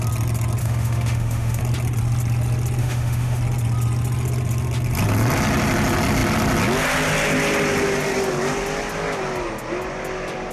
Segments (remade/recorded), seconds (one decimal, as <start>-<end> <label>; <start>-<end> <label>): 0.0-0.6 recorded; 0.6-1.6 remade; 1.6-2.8 recorded; 2.8-3.4 remade; 3.4-10.5 recorded